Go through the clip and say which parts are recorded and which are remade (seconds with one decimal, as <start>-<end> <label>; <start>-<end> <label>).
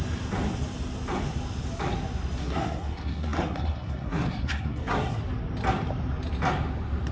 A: 0.0-2.4 recorded; 2.4-5.2 remade; 5.2-7.1 recorded